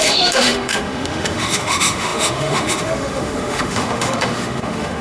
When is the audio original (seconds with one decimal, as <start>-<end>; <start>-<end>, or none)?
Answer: none